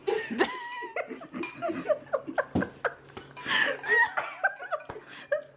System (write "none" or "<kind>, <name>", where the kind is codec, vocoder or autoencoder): none